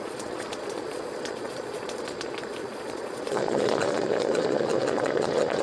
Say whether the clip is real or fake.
fake